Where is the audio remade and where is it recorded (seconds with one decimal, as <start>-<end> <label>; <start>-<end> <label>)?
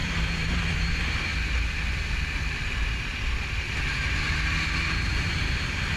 0.0-1.3 remade; 1.3-4.9 recorded; 4.9-6.0 remade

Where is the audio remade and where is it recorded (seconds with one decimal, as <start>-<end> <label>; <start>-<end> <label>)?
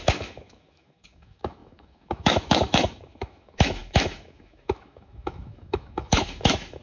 0.0-6.8 remade